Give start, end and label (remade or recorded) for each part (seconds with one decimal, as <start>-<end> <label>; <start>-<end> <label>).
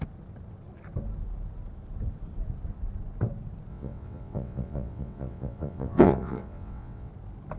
0.0-3.7 recorded; 3.7-7.1 remade; 7.1-7.6 recorded